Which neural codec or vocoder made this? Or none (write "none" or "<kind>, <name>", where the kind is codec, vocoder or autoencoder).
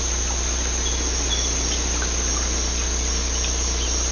none